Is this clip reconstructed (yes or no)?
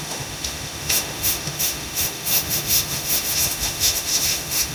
yes